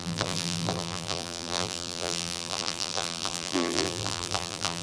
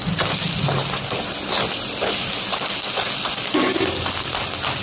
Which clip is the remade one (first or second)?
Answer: first